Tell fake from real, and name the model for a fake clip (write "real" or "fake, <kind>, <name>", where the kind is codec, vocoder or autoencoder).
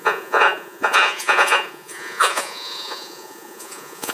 fake, vocoder, Vocos